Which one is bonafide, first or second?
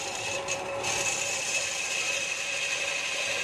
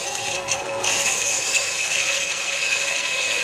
first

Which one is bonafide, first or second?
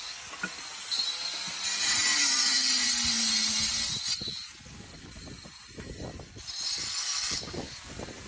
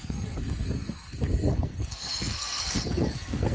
first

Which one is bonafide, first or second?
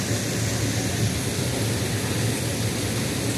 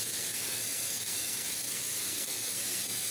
first